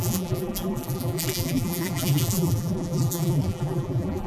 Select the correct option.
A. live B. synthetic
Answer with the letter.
B